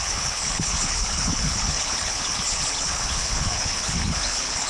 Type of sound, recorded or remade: remade